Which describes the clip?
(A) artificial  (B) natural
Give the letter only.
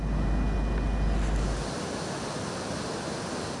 B